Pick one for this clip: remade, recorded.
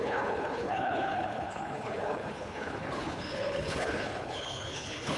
remade